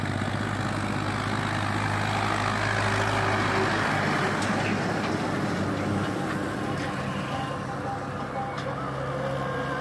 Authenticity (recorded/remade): recorded